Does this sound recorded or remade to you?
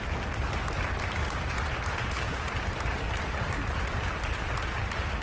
recorded